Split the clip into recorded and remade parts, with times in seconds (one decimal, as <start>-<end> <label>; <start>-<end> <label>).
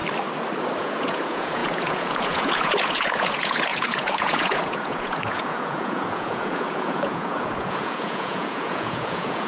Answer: 0.0-0.8 recorded; 0.8-9.5 remade